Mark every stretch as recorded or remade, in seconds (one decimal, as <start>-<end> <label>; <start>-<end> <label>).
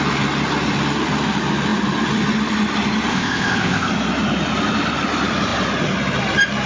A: 0.0-3.1 recorded; 3.1-3.9 remade; 3.9-6.7 recorded